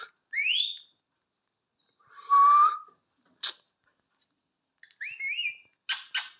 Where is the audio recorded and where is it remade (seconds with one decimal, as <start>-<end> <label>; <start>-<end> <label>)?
0.0-6.4 recorded